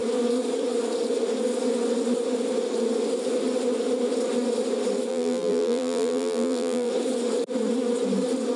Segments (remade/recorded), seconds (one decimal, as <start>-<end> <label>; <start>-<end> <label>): 0.0-5.1 recorded; 5.1-6.9 remade; 6.9-8.6 recorded